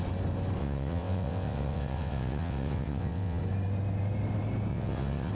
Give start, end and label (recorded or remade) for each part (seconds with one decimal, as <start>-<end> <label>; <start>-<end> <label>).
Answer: 0.0-0.6 recorded; 0.6-3.4 remade; 3.4-4.7 recorded; 4.7-5.3 remade